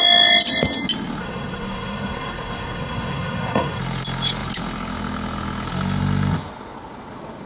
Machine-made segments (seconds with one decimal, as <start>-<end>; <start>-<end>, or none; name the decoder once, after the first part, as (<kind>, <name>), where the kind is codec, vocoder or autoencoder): 1.2-3.8 (codec, SNAC)